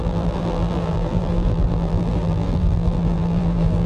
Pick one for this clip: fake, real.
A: fake